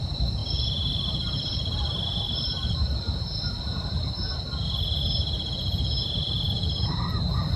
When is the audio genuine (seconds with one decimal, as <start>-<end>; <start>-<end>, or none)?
0.0-0.4; 4.3-7.6